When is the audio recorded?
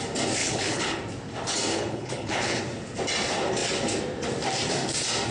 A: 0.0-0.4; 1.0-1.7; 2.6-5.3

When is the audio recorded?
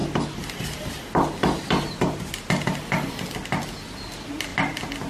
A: 0.0-5.1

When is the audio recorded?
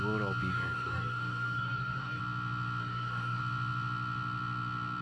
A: 0.0-0.5; 2.2-2.8; 3.4-5.0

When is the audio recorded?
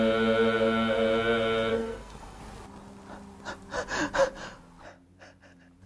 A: 0.0-1.7; 2.4-5.9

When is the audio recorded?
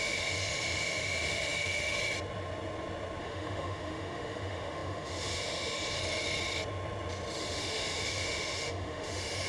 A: 2.0-3.2; 6.0-7.4